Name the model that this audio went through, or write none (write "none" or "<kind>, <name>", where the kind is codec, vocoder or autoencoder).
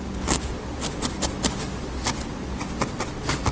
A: none